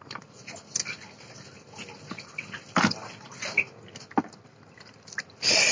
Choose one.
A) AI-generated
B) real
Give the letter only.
B